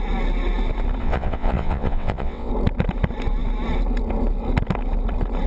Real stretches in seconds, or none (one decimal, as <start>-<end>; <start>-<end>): 0.0-1.0; 2.5-5.5